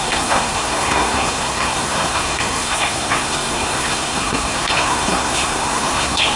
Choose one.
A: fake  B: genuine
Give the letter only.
A